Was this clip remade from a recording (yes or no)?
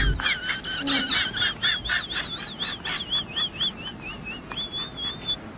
no